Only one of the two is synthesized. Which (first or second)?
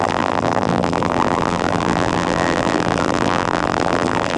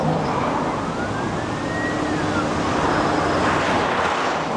first